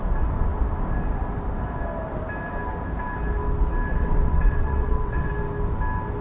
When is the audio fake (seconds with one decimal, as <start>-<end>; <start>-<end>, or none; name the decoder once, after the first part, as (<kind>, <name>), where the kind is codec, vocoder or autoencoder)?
3.9-5.3 (vocoder, WaveNeXt)